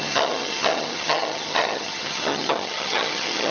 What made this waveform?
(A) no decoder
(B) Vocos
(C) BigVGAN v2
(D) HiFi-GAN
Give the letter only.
D